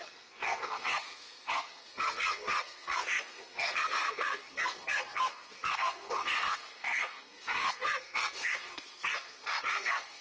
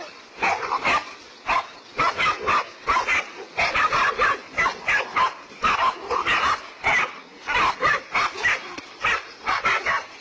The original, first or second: second